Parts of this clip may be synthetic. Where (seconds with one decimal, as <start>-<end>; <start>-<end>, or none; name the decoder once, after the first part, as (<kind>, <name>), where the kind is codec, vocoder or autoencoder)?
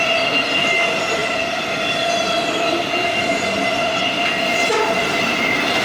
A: none